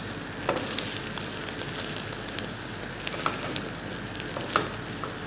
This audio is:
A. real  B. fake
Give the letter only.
A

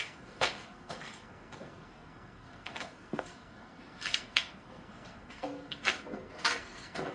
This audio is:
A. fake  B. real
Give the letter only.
A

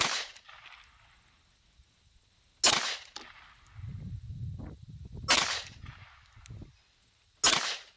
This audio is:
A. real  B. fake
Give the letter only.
A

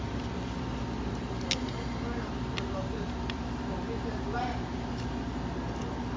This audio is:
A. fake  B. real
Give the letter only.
B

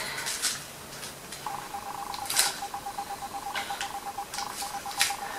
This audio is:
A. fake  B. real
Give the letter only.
B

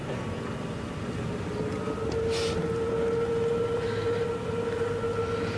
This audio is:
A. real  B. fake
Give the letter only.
A